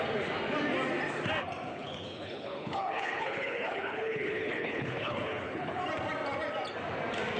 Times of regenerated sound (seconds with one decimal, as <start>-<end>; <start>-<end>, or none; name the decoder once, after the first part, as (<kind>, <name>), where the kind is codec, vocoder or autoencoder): 1.7-5.8 (codec, HILCodec)